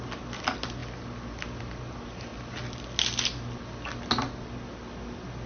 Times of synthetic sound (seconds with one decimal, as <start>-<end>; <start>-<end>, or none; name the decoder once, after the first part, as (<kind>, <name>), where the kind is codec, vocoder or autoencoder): none